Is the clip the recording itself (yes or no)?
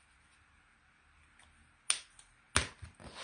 yes